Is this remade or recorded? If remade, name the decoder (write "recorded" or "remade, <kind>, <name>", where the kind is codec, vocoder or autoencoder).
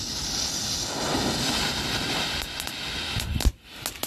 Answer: recorded